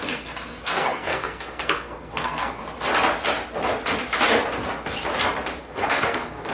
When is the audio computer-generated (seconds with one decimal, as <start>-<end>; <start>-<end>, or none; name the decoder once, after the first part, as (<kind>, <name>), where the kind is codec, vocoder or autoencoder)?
0.0-2.6 (codec, SNAC); 5.6-6.5

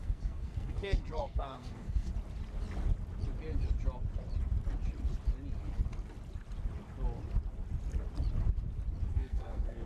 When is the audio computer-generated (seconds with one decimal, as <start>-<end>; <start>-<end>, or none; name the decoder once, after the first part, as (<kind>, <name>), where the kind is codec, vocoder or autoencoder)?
0.0-2.1 (codec, SNAC); 9.1-9.9